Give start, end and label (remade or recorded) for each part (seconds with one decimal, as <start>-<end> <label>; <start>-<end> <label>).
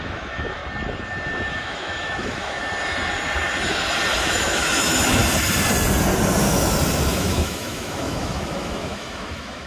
0.0-0.6 remade; 0.6-1.5 recorded; 1.5-2.6 remade; 2.6-4.2 recorded; 4.2-5.2 remade; 5.2-7.1 recorded; 7.1-9.7 remade